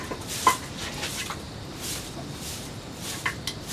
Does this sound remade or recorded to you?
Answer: recorded